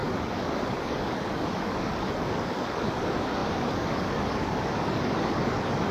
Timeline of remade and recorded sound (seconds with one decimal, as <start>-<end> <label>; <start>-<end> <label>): 0.0-5.9 remade